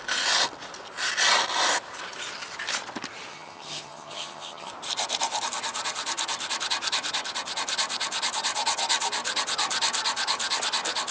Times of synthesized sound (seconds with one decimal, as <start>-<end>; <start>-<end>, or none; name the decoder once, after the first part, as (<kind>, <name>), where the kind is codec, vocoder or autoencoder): 3.3-4.7 (vocoder, HiFi-GAN)

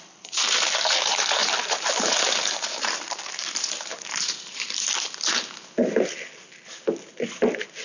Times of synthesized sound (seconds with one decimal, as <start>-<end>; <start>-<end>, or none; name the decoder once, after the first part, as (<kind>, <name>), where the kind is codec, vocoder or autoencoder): 0.0-5.8 (vocoder, BigVGAN v2); 7.1-7.8

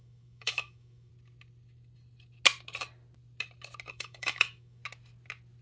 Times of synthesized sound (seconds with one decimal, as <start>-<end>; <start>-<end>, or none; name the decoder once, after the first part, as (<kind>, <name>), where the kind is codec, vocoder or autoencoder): 0.0-1.1 (autoencoder, DAC-VAE); 3.9-4.8

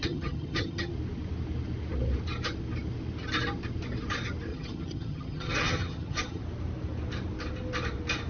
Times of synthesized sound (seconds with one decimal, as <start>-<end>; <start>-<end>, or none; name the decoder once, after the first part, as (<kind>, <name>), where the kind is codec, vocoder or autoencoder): 0.0-0.9 (vocoder, HiFi-GAN); 4.5-6.4